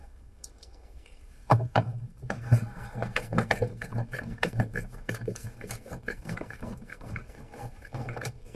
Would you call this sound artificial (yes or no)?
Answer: yes